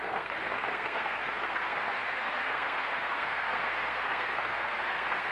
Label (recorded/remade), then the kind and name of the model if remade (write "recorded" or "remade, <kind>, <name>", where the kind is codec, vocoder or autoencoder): remade, codec, SNAC